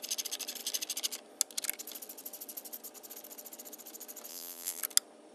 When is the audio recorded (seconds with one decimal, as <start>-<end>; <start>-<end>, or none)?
0.0-4.3; 4.8-5.3